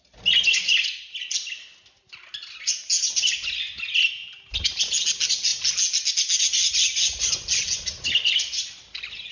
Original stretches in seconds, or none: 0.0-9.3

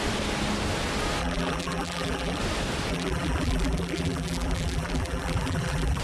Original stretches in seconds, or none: 0.0-1.2; 2.4-2.9

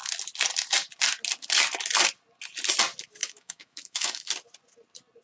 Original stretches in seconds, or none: 0.0-3.2; 4.3-5.2

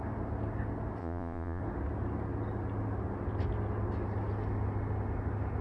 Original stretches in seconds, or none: 0.0-1.0; 1.6-5.6

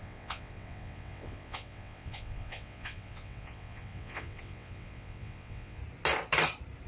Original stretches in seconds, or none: 5.8-6.9

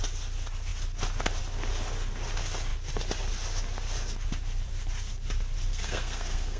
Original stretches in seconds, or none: 0.0-5.7

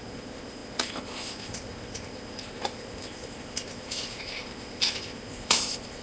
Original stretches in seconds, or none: none

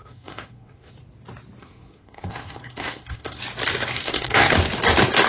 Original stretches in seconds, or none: 0.9-1.6; 3.4-3.9; 4.5-5.3